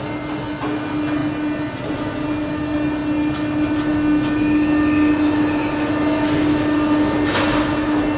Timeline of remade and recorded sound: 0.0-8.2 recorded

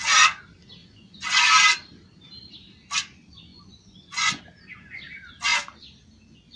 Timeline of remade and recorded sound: 0.0-0.8 recorded; 0.8-1.4 remade; 1.4-3.5 recorded; 3.5-4.4 remade; 4.4-6.6 recorded

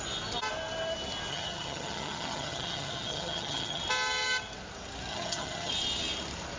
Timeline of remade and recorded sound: 0.0-1.3 recorded; 1.3-3.8 remade; 3.8-5.1 recorded; 5.1-5.7 remade; 5.7-6.6 recorded

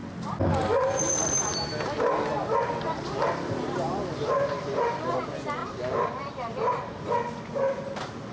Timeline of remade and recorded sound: 0.0-8.3 recorded

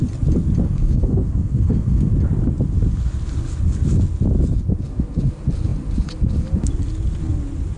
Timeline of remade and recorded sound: 0.0-0.6 recorded; 0.6-2.1 remade; 2.1-7.8 recorded

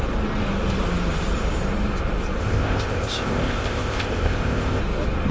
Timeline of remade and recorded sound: 0.0-2.4 recorded; 2.4-4.8 remade; 4.8-5.3 recorded